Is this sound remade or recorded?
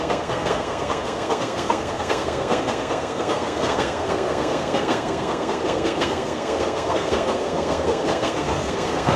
remade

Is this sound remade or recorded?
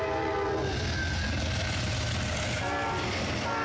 recorded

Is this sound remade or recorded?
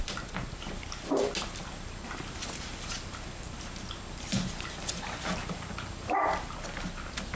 recorded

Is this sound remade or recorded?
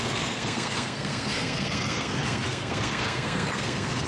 remade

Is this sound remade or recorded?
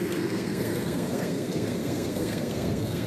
remade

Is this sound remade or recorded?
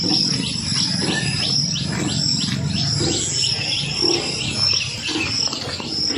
recorded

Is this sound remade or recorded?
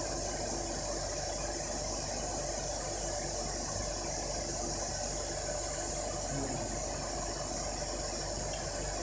recorded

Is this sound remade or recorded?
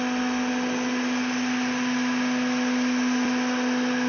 recorded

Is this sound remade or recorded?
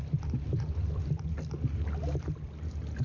recorded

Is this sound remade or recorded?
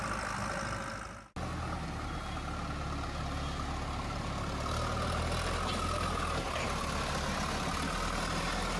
recorded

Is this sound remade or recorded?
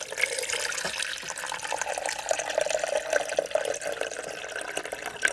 recorded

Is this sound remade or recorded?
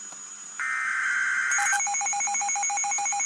recorded